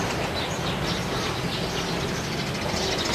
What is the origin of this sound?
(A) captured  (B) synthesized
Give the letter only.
A